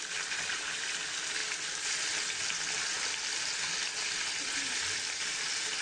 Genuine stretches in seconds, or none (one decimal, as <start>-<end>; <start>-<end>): 0.0-5.8